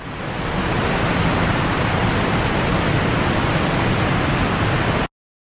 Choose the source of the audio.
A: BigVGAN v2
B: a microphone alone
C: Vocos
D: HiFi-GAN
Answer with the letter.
B